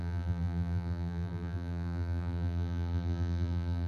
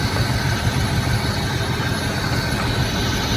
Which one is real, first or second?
second